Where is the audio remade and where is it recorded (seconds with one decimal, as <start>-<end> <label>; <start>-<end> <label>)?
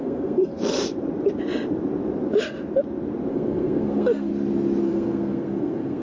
0.0-0.5 remade; 0.5-3.3 recorded; 3.3-4.3 remade; 4.3-4.8 recorded; 4.8-6.0 remade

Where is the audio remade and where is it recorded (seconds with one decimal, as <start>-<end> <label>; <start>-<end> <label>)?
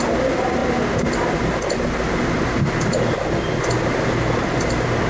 0.0-5.1 recorded